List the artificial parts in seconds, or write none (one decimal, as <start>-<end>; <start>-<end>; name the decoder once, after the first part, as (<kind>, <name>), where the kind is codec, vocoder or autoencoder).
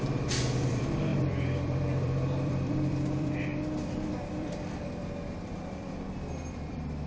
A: 0.0-3.5 (vocoder, BigVGAN v2); 4.1-7.1